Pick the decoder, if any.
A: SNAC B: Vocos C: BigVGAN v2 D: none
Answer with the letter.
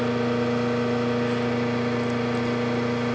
D